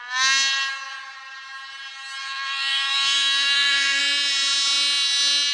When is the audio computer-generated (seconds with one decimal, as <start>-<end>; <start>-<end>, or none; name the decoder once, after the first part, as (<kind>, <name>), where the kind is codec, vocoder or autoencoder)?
2.2-4.0 (vocoder, BigVGAN v2)